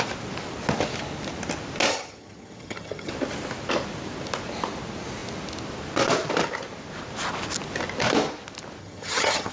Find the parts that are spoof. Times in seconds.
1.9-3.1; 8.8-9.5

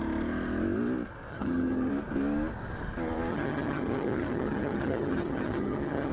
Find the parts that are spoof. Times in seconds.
1.3-1.9; 3.3-6.1